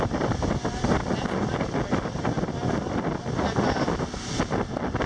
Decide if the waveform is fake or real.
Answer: real